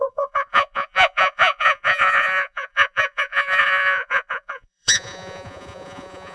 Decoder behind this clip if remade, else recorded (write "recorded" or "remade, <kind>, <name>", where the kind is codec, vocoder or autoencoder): remade, vocoder, Vocos